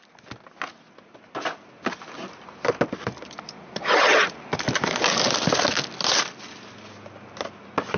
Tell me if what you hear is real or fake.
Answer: real